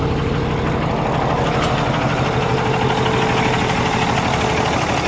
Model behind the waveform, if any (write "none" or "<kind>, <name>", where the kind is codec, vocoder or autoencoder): none